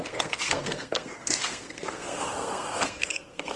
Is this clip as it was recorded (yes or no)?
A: no